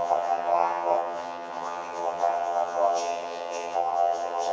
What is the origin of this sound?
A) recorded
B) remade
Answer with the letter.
B